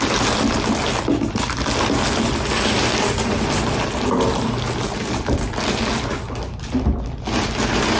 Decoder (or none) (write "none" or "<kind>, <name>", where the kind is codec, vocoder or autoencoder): none